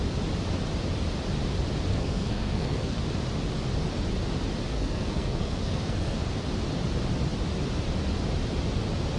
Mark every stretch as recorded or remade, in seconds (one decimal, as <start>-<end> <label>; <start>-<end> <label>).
0.0-1.9 recorded; 1.9-3.0 remade; 3.0-4.7 recorded; 4.7-6.2 remade; 6.2-9.2 recorded